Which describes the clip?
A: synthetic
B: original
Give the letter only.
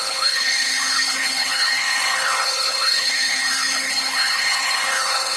A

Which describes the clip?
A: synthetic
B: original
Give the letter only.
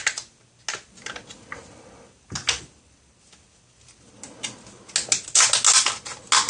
B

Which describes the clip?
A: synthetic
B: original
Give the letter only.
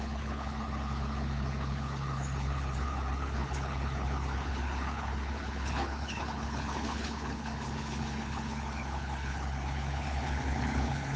A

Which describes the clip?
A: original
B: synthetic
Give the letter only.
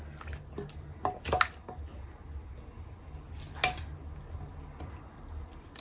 A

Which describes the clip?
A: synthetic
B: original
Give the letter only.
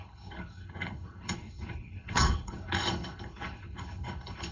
A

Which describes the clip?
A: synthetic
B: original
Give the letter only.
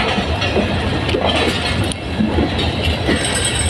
B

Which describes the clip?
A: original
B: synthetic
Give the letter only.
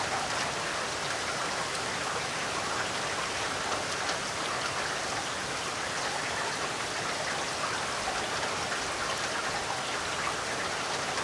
A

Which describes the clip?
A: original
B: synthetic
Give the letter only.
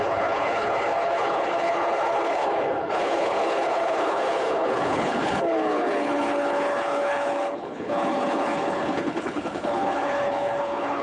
B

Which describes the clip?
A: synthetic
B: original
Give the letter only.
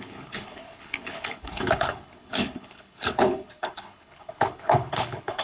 A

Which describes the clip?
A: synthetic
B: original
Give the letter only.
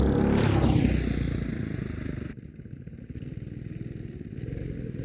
B